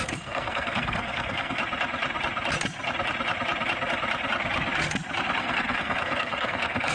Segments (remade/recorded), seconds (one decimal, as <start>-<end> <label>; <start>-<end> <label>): 0.0-1.6 remade; 1.6-5.4 recorded; 5.4-6.9 remade